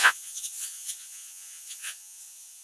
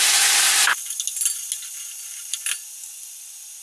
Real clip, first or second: second